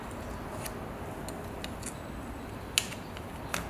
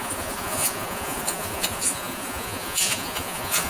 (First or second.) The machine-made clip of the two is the second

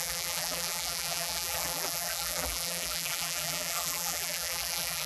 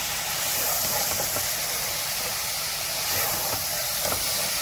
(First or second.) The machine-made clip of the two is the first